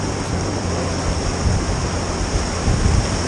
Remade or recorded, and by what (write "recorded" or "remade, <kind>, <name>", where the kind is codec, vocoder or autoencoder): recorded